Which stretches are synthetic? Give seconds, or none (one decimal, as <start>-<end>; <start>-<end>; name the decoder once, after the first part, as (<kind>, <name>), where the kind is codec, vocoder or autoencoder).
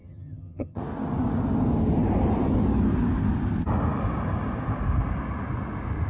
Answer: 0.0-0.8 (vocoder, HiFi-GAN)